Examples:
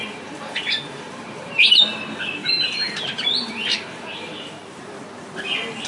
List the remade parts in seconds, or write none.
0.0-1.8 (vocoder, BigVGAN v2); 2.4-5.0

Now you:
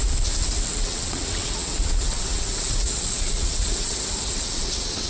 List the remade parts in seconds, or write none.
0.7-5.1 (vocoder, WaveNeXt)

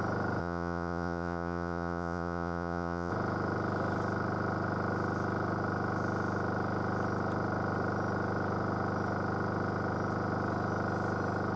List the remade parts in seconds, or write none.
0.4-3.1 (vocoder, Vocos)

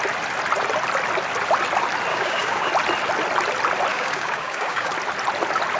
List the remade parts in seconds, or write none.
2.1-2.7 (codec, DAC); 3.9-4.9

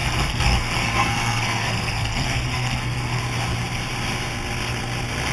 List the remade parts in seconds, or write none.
0.0-3.2 (codec, SNAC)